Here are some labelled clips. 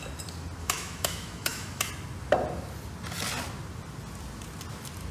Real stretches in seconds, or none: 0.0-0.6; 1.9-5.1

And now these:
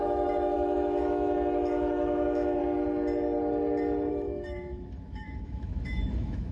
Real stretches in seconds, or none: 2.6-4.1

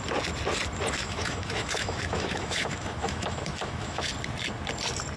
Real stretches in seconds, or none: 0.0-1.0; 4.1-5.2

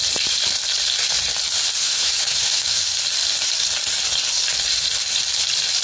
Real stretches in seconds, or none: 0.0-1.8; 2.8-5.8